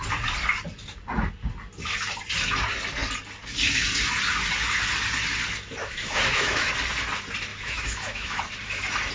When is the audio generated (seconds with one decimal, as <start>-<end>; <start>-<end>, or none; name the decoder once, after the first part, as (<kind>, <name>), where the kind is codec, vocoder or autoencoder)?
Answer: 5.8-6.7 (autoencoder, DAC-VAE); 7.5-8.4